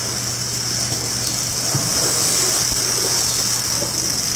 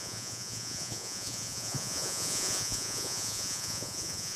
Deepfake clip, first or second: second